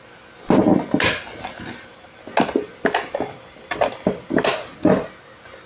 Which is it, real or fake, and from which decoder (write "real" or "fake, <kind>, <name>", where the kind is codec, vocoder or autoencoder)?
real